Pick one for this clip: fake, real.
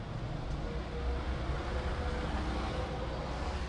real